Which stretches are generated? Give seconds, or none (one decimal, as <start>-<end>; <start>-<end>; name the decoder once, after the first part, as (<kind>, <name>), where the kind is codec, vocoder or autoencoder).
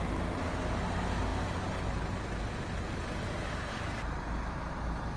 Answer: none